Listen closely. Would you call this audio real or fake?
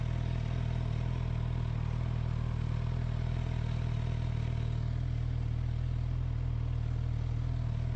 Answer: real